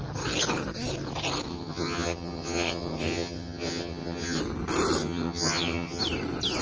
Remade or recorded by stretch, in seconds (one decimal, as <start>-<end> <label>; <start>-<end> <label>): 0.0-1.5 recorded; 1.5-4.4 remade; 4.4-5.0 recorded; 5.0-6.0 remade; 6.0-6.6 recorded